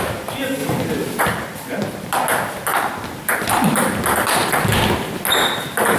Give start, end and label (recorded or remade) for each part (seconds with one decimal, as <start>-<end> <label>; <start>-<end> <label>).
0.0-6.0 recorded